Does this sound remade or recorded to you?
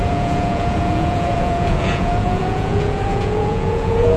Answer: remade